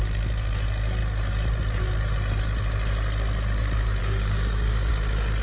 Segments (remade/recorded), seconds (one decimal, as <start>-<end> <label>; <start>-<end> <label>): 0.0-4.0 recorded; 4.0-4.9 remade; 4.9-5.4 recorded